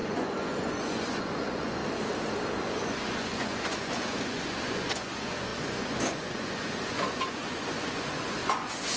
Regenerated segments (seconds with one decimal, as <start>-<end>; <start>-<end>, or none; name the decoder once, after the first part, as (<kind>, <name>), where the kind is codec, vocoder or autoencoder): 0.0-1.8 (vocoder, Vocos); 2.6-9.0